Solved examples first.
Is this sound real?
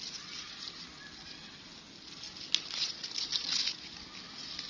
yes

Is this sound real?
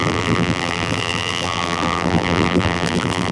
no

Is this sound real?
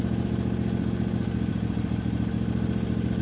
yes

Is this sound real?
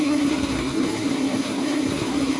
no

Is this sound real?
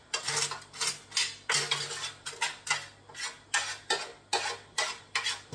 yes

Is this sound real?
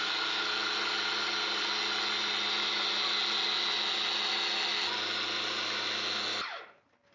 yes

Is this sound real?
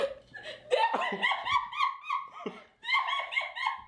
yes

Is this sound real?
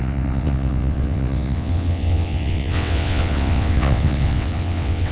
no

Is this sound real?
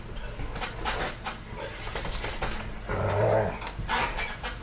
yes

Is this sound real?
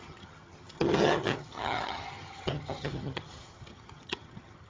no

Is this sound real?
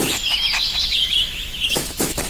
no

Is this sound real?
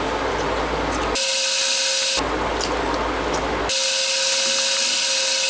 yes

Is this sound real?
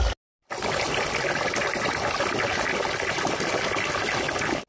yes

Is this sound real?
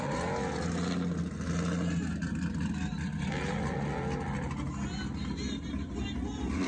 yes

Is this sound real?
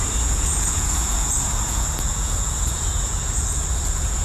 no